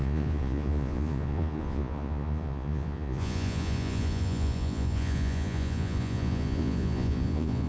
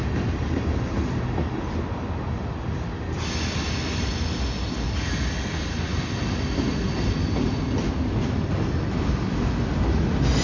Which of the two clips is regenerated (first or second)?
first